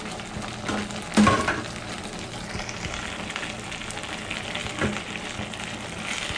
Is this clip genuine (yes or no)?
yes